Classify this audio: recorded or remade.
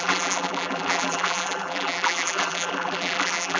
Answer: remade